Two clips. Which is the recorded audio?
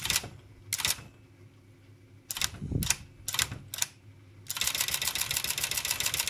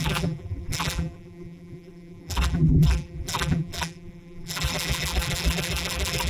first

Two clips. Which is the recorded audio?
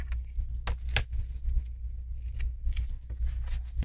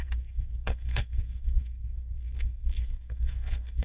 first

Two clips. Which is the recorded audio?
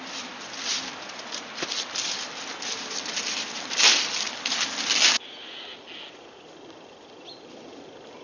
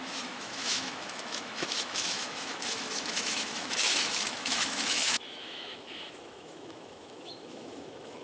first